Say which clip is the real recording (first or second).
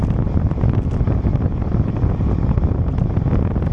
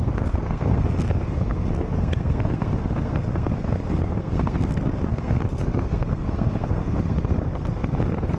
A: first